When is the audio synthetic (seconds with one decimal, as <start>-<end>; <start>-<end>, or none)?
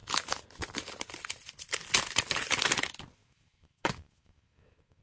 3.2-5.0